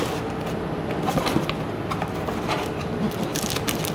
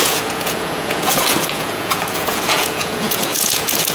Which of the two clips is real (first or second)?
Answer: first